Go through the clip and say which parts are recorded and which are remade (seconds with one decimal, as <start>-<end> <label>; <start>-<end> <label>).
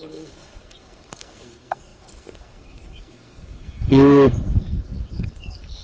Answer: 0.0-5.8 remade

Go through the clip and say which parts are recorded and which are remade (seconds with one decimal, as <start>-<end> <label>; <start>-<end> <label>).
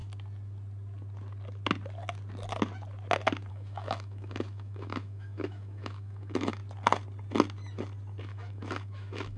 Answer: 0.0-3.5 recorded; 3.5-6.6 remade; 6.6-8.2 recorded; 8.2-9.4 remade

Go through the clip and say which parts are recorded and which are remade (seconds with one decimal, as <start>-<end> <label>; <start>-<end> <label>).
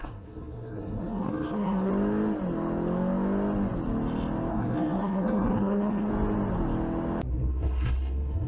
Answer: 0.0-1.9 remade; 1.9-4.5 recorded; 4.5-6.1 remade; 6.1-7.3 recorded; 7.3-8.5 remade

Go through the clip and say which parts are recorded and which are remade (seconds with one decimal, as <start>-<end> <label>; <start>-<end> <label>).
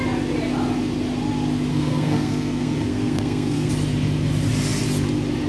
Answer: 0.0-1.7 recorded; 1.7-3.7 remade; 3.7-5.5 recorded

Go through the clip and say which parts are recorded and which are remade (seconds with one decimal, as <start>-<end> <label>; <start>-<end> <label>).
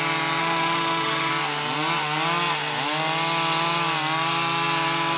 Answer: 0.0-0.4 recorded; 0.4-1.3 remade; 1.3-5.2 recorded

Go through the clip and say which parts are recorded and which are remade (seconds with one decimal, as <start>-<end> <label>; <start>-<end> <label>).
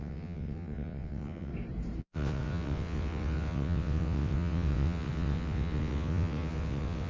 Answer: 0.0-1.5 remade; 1.5-2.0 recorded; 2.0-7.1 remade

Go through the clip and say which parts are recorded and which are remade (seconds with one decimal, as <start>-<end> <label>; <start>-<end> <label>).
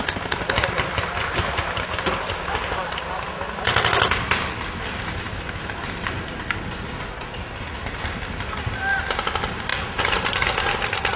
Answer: 0.0-11.2 recorded